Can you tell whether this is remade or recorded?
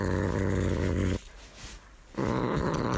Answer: recorded